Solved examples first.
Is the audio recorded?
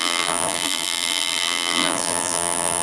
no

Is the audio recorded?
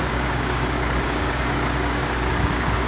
no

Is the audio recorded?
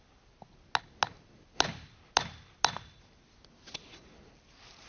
yes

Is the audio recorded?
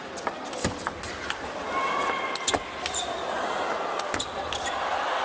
yes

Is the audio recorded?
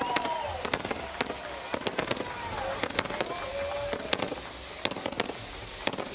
yes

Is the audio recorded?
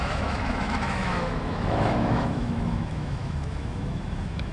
no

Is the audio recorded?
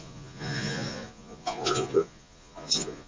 no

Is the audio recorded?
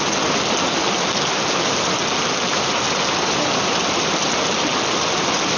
yes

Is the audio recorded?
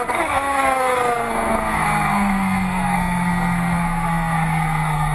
no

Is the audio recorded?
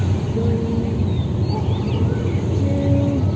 yes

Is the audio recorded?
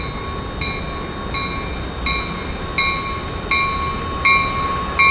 yes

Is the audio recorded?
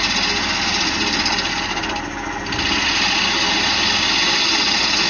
yes